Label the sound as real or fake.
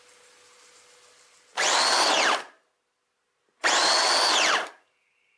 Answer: real